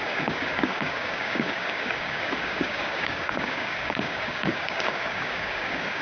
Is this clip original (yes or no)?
no